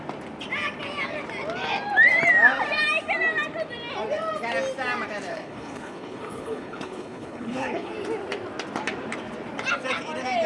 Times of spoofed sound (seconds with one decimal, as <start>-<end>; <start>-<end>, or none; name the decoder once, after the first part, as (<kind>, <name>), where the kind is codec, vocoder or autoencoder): 5.3-7.9 (codec, HILCodec)